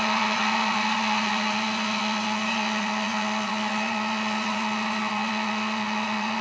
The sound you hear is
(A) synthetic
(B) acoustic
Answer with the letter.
A